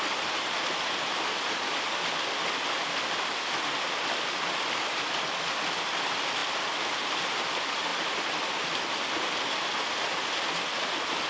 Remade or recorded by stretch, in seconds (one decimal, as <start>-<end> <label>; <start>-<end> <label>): 0.0-11.3 recorded